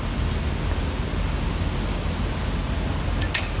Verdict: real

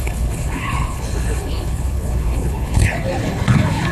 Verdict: fake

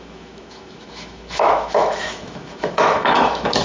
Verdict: fake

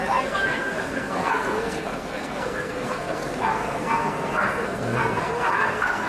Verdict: fake